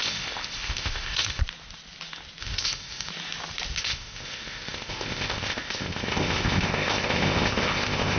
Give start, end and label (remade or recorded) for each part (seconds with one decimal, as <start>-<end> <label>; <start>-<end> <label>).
0.0-1.4 remade; 1.4-2.4 recorded; 2.4-3.1 remade; 3.1-3.8 recorded; 3.8-8.2 remade